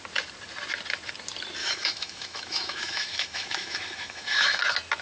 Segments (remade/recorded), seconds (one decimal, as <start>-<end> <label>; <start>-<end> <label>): 0.0-1.6 recorded; 1.6-4.6 remade; 4.6-5.0 recorded